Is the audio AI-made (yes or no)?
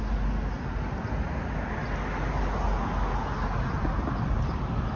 no